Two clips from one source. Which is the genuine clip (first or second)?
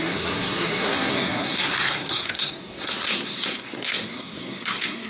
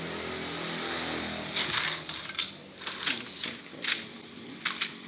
second